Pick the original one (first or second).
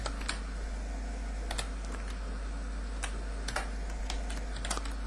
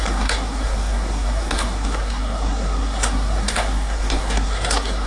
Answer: first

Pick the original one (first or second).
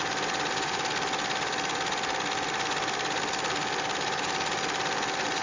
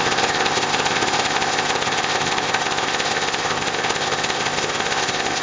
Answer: first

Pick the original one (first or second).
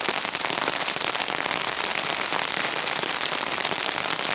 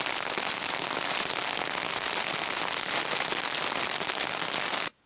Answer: second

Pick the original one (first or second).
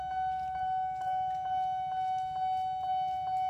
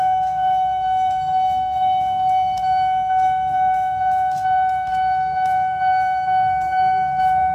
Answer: first